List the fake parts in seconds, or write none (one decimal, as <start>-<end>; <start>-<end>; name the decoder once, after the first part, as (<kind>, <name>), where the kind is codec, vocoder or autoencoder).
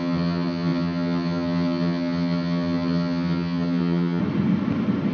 0.0-4.2 (vocoder, HiFi-GAN)